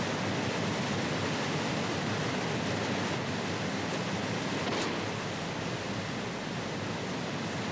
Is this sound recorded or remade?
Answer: recorded